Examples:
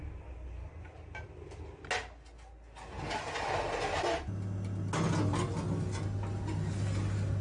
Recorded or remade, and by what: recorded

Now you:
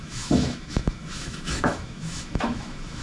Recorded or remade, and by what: remade, autoencoder, DAC-VAE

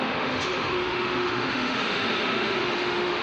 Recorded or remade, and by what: remade, autoencoder, DAC-VAE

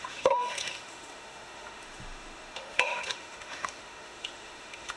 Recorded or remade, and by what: remade, autoencoder, DAC-VAE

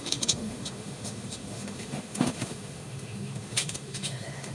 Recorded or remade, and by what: remade, autoencoder, DAC-VAE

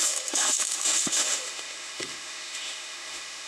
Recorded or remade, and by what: remade, autoencoder, DAC-VAE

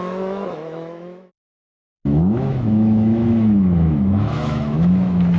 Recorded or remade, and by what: remade, autoencoder, DAC-VAE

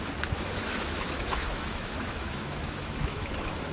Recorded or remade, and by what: remade, autoencoder, DAC-VAE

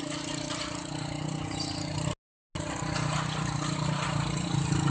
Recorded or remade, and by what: recorded